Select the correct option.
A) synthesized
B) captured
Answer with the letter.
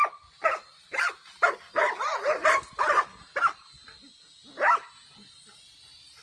B